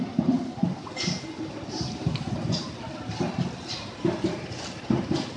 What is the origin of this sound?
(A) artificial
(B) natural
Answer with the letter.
B